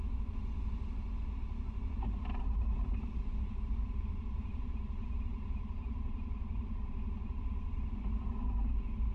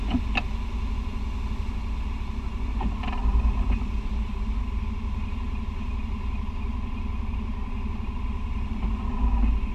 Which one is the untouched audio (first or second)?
second